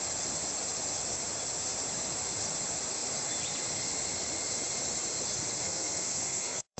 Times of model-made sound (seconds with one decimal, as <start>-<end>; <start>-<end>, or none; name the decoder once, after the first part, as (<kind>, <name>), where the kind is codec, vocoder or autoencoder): 5.6-6.8 (codec, SNAC)